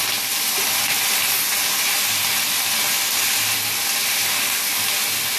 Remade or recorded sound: recorded